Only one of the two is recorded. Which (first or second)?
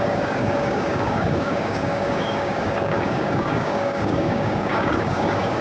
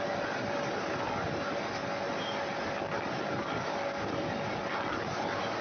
second